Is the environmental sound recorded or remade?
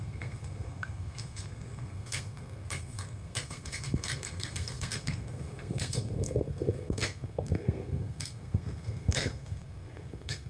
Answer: remade